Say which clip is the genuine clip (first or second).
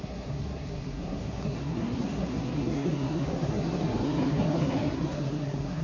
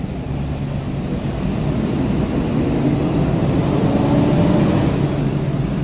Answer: second